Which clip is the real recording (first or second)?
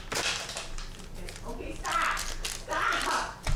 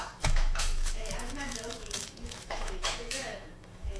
first